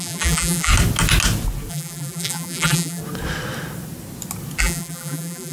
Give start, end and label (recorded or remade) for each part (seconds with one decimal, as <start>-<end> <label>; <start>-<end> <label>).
0.0-0.7 remade; 0.7-1.7 recorded; 1.7-3.0 remade; 3.0-4.6 recorded; 4.6-5.5 remade